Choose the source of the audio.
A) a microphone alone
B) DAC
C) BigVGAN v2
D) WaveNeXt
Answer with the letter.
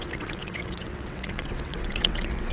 D